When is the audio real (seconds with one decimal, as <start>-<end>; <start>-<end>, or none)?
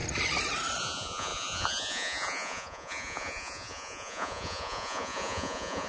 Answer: 0.0-0.8